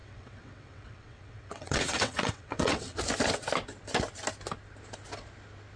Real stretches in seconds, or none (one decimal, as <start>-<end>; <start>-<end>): 3.0-5.8